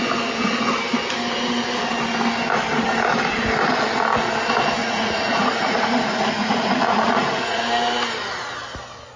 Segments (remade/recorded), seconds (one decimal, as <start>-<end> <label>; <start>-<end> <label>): 0.0-4.8 recorded; 4.8-7.6 remade; 7.6-9.2 recorded